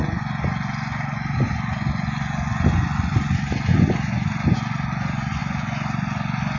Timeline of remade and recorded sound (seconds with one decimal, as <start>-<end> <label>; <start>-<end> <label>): 0.0-6.6 remade